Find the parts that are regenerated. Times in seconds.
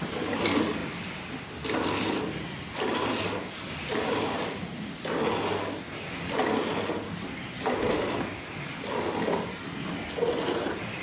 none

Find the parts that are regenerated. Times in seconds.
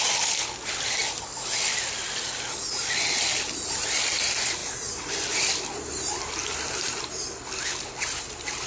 0.6-4.6 (vocoder, BigVGAN v2); 5.1-8.7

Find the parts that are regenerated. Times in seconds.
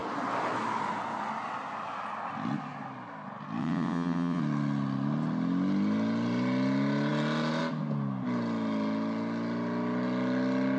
3.6-4.4 (vocoder, WaveNeXt)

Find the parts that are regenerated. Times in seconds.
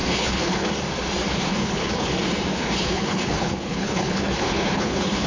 0.0-0.7 (codec, HILCodec); 1.6-2.1; 2.5-5.3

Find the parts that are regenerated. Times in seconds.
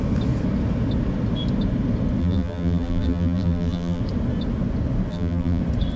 2.2-4.0 (vocoder, BigVGAN v2); 5.1-5.6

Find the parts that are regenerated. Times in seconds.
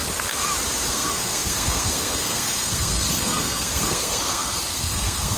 0.9-5.4 (codec, SNAC)